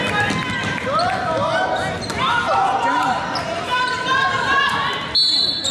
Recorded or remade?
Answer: recorded